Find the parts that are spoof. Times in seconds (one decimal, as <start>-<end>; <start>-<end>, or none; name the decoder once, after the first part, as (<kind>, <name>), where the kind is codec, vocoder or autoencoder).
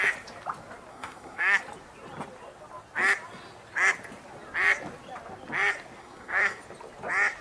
0.9-1.6 (codec, SNAC); 6.0-6.6